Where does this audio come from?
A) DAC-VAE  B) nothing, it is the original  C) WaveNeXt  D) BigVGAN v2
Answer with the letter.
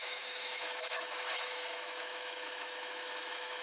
A